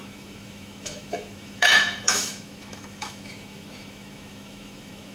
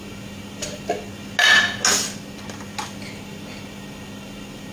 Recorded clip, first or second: second